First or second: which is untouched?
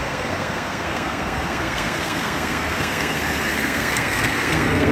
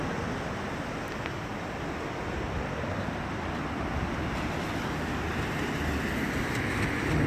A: second